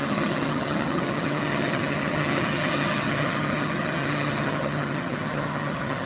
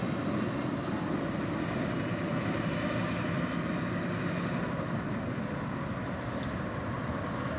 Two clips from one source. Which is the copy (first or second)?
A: first